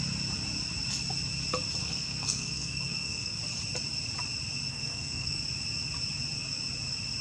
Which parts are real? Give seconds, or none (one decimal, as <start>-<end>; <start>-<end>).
0.0-1.8; 3.4-4.7; 5.4-7.2